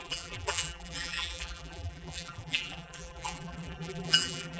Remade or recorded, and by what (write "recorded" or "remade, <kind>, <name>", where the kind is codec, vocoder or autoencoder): remade, vocoder, BigVGAN v2